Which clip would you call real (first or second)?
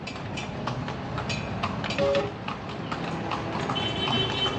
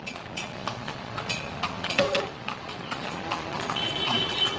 first